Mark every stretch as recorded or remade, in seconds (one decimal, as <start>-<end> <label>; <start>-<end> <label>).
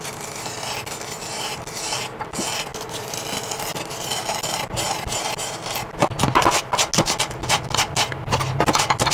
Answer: 0.0-9.1 recorded